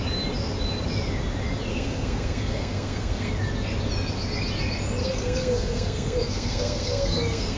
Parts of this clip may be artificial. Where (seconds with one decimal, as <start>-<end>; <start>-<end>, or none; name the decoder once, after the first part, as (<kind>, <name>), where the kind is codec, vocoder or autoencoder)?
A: 1.7-3.3 (codec, SNAC); 5.0-7.6